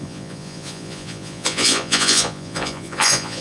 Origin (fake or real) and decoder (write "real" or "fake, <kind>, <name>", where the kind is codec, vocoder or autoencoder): fake, vocoder, Vocos